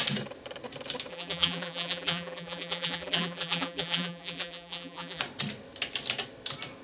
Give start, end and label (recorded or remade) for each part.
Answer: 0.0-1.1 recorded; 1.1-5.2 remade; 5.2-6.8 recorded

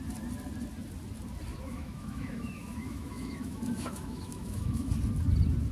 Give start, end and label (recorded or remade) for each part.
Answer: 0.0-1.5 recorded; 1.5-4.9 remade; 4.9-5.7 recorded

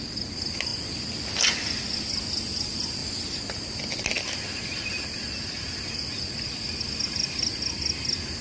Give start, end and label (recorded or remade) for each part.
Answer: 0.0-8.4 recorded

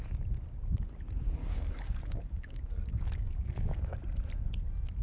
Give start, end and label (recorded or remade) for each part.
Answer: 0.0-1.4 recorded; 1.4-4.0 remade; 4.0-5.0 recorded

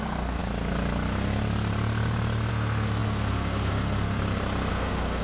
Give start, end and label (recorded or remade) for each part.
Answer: 0.0-0.4 remade; 0.4-2.5 recorded; 2.5-4.2 remade; 4.2-4.7 recorded; 4.7-5.2 remade